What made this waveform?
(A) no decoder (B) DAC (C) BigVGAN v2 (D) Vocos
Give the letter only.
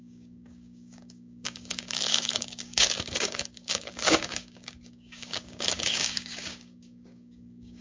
B